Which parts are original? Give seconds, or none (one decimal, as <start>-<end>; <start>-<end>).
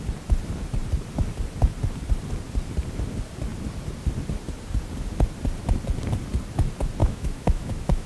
0.0-7.0